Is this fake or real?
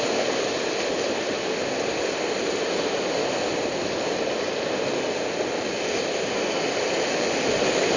real